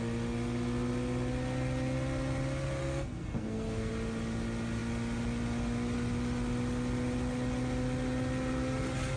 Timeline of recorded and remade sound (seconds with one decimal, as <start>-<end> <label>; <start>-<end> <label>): 0.0-2.8 recorded; 2.8-3.9 remade; 3.9-9.2 recorded